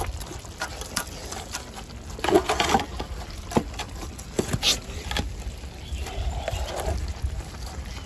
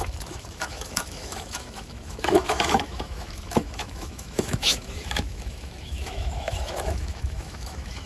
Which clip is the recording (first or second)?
first